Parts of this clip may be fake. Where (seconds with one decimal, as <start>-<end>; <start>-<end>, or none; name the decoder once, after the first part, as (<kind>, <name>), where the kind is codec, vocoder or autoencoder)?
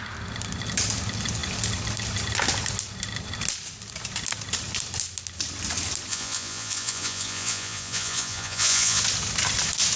6.1-9.0 (vocoder, Vocos)